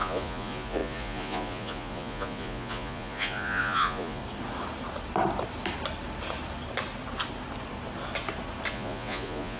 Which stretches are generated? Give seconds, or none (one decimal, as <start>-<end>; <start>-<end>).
0.0-4.2; 8.7-9.6